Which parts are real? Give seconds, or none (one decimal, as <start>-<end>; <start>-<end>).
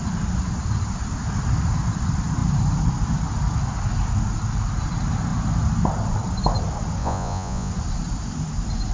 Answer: 0.0-7.0; 7.7-8.9